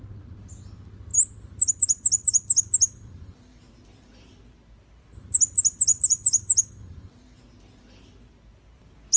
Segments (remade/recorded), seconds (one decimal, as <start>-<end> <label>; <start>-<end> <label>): 0.0-2.8 recorded; 2.8-4.3 remade; 4.3-5.9 recorded; 5.9-7.4 remade; 7.4-9.2 recorded